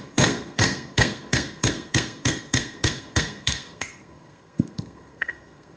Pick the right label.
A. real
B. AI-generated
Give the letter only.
B